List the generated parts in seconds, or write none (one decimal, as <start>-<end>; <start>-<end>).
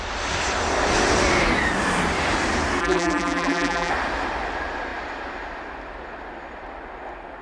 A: 2.8-3.9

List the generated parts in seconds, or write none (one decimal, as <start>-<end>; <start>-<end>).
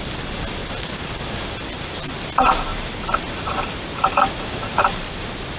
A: 2.7-5.1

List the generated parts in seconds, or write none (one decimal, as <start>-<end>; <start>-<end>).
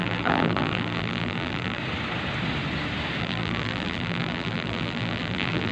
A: 0.0-1.8; 3.2-5.7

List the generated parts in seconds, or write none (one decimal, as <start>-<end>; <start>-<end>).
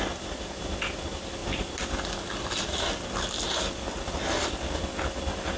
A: none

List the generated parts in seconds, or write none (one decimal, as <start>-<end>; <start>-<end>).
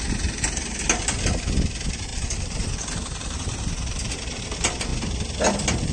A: 2.1-4.4